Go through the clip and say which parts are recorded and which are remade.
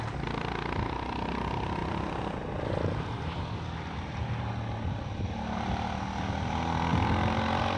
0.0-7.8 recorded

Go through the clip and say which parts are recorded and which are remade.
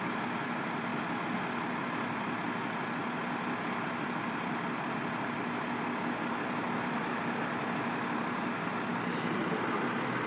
0.0-10.3 recorded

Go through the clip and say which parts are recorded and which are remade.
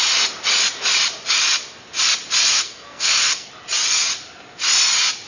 0.0-2.5 recorded; 2.5-3.5 remade; 3.5-5.3 recorded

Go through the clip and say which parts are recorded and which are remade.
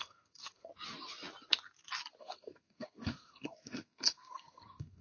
0.0-0.7 remade; 0.7-2.2 recorded; 2.2-5.0 remade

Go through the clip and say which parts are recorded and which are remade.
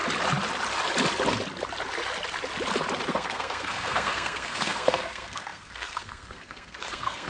0.0-3.1 recorded; 3.1-7.3 remade